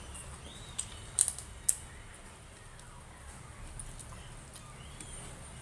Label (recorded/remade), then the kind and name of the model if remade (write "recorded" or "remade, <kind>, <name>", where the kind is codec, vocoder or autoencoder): recorded